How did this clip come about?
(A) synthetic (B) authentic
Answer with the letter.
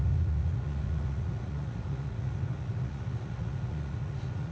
A